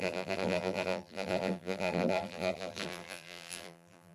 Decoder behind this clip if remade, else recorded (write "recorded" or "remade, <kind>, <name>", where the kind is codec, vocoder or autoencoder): remade, vocoder, BigVGAN v2